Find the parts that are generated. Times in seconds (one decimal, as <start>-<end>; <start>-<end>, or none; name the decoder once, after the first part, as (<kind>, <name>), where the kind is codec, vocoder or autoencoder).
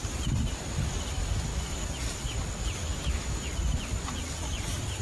1.5-2.0 (autoencoder, DAC-VAE); 2.8-3.5